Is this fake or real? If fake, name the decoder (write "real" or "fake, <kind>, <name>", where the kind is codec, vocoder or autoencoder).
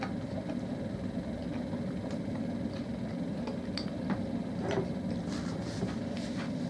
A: real